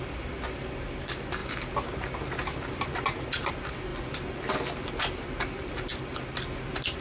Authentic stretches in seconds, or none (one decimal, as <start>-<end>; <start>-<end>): 0.0-7.0